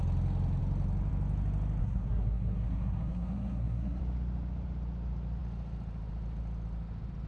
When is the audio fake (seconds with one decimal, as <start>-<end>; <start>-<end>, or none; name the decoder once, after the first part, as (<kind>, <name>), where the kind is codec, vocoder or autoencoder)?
1.8-4.0 (codec, SNAC)